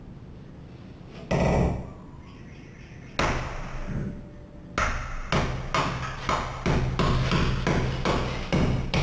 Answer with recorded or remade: recorded